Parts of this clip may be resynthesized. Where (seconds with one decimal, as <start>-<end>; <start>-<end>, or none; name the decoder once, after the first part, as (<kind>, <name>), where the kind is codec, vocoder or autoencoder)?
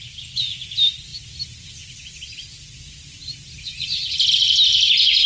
none